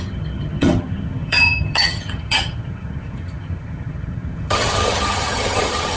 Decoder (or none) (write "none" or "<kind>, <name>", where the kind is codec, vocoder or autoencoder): vocoder, HiFi-GAN